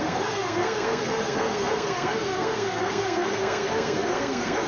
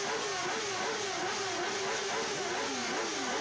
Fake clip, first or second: first